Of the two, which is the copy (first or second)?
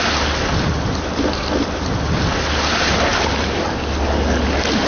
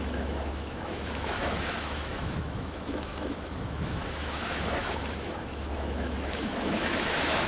second